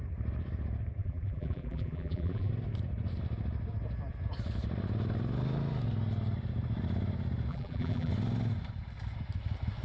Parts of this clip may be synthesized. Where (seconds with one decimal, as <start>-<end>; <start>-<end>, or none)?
1.0-2.5; 7.5-8.1